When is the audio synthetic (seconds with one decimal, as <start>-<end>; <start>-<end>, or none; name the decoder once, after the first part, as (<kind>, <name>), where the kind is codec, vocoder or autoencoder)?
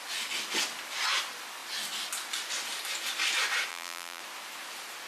3.7-4.2 (vocoder, BigVGAN v2)